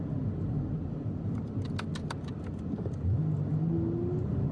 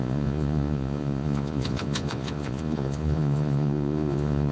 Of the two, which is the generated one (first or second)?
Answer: second